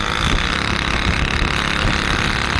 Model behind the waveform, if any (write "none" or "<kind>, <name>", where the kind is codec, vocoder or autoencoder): none